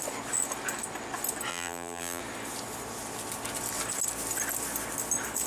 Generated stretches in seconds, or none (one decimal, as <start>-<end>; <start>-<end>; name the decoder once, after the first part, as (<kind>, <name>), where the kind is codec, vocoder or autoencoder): 1.5-2.2 (vocoder, BigVGAN v2)